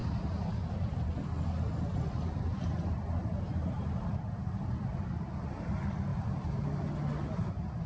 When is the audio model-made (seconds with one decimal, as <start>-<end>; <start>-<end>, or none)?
0.0-1.1; 2.5-5.0; 6.1-6.6